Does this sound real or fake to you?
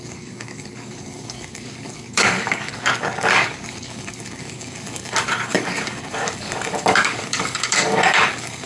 fake